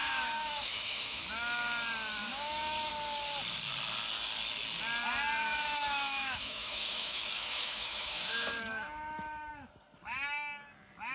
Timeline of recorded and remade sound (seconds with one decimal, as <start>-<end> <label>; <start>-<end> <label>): 0.0-1.2 remade; 1.2-2.2 recorded; 2.2-2.9 remade; 2.9-5.4 recorded; 5.4-9.5 remade; 9.5-11.1 recorded